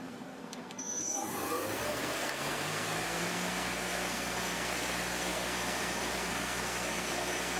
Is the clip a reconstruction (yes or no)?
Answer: yes